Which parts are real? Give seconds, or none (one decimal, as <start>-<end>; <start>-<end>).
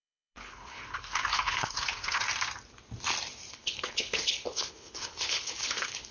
2.2-3.5